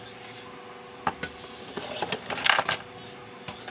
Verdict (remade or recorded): recorded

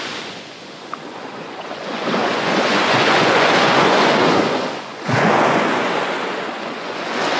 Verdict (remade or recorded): remade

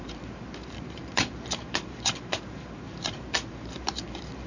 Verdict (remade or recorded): remade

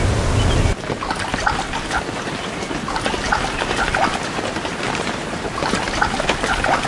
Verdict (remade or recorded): recorded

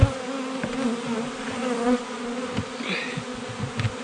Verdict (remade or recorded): recorded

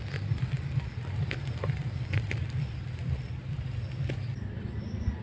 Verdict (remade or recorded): remade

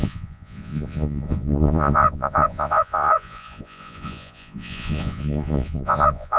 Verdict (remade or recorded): remade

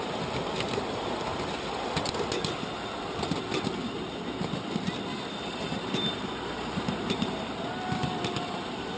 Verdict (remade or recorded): recorded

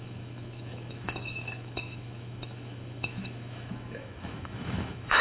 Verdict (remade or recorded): remade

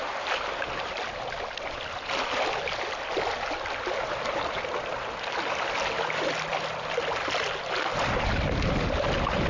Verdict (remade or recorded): recorded